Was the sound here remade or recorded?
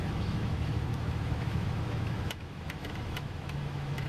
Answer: remade